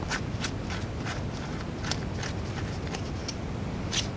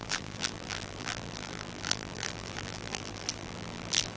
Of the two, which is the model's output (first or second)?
second